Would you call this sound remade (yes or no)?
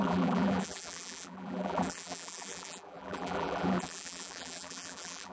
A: yes